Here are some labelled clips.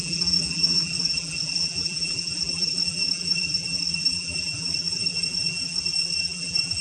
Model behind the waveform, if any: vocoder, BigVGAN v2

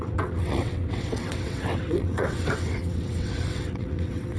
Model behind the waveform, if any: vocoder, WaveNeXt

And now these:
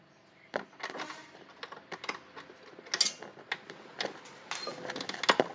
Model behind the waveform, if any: none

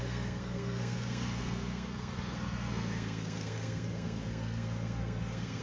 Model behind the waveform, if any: codec, SNAC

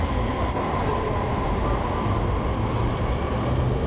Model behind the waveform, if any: none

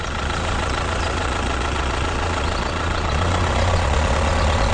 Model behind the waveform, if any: vocoder, Vocos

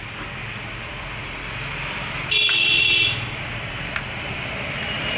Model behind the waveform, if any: none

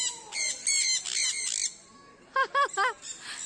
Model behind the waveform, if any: none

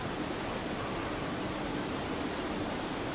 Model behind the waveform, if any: none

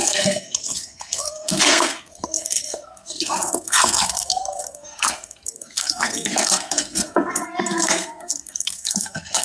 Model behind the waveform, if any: codec, SNAC